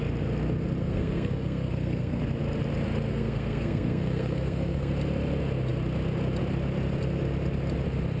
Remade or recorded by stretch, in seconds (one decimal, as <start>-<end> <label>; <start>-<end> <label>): 0.0-0.8 recorded; 0.8-2.2 remade; 2.2-3.1 recorded; 3.1-4.9 remade; 4.9-8.2 recorded